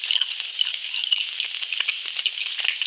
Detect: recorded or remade recorded